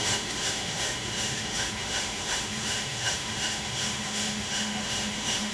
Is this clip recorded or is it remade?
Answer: remade